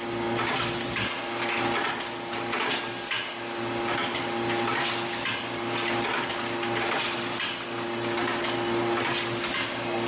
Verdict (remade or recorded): recorded